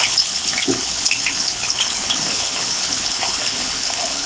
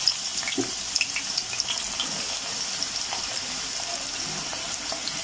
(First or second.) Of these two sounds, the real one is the second